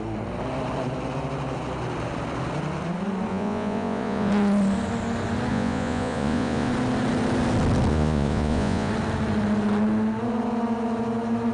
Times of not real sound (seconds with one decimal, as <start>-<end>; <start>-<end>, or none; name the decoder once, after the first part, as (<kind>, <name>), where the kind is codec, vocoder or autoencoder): 3.3-4.3 (vocoder, Vocos); 5.5-6.7; 7.9-8.9